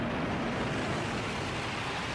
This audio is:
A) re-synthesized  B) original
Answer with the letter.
B